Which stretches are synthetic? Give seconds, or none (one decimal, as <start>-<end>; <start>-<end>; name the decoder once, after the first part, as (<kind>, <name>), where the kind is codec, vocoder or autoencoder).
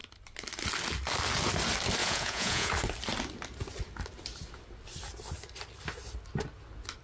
2.0-2.7 (vocoder, Vocos)